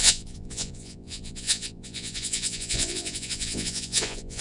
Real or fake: fake